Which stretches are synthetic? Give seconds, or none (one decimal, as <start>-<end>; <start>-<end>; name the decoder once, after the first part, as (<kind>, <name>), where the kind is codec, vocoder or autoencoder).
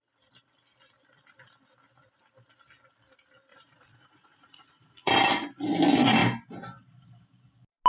3.5-5.1 (vocoder, Vocos)